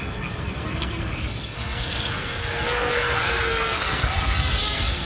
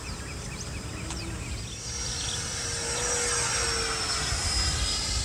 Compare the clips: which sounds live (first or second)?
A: second